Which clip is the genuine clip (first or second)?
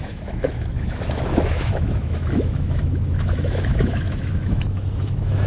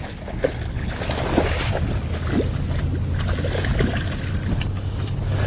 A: second